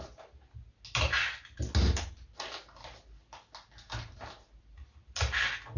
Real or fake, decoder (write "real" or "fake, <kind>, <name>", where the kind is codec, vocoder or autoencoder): real